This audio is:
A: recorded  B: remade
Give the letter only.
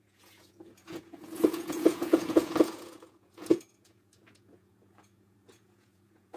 B